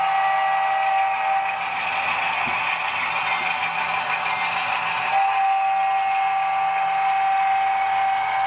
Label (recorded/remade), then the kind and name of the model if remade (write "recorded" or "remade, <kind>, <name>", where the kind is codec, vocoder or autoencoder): recorded